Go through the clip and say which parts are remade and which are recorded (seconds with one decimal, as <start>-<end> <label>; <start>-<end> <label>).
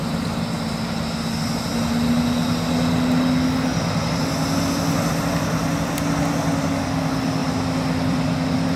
0.0-3.7 recorded; 3.7-4.6 remade; 4.6-7.4 recorded; 7.4-8.8 remade